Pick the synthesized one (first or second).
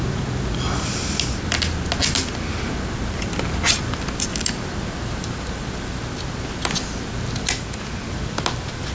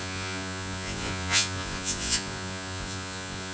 second